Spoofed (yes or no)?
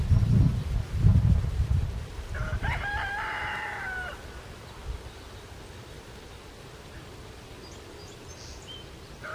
no